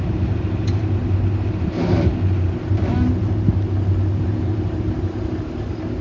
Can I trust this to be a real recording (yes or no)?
yes